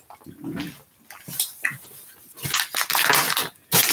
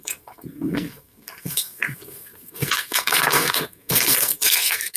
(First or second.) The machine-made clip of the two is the second